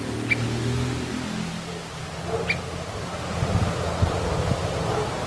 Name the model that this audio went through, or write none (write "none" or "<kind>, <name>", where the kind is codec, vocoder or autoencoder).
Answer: none